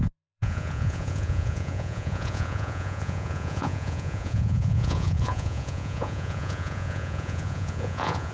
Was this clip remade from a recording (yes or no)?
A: yes